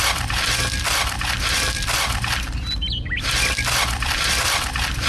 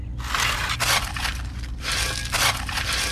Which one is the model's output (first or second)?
first